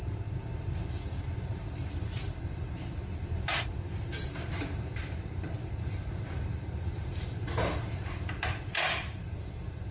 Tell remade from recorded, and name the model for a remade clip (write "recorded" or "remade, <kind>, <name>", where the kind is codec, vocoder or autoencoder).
remade, vocoder, BigVGAN v2